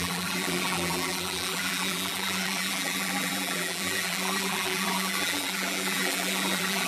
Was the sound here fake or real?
fake